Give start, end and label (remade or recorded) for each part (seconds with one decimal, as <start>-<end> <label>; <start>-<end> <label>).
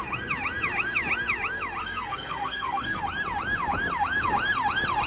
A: 0.0-1.8 recorded; 1.8-3.0 remade; 3.0-5.1 recorded